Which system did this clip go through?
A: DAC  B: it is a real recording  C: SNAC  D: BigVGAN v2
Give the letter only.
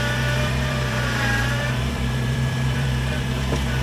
D